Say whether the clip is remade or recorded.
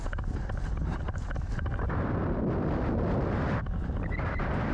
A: recorded